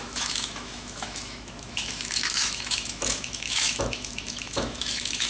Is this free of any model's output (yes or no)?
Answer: no